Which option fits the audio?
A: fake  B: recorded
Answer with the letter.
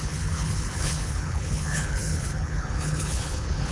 A